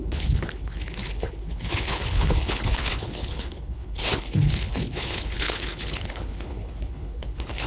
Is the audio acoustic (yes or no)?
no